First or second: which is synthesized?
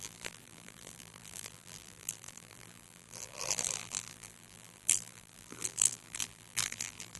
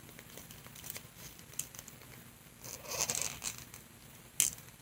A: first